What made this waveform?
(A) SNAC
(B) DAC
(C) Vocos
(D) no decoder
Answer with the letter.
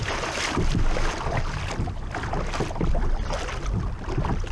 D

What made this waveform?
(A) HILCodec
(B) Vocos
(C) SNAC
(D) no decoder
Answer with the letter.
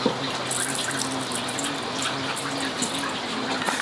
D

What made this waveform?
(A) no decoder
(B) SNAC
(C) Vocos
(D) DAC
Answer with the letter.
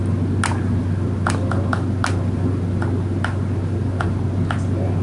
A